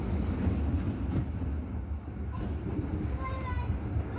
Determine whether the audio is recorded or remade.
recorded